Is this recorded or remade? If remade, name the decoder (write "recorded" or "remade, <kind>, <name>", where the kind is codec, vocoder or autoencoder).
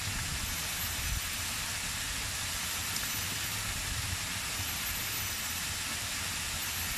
recorded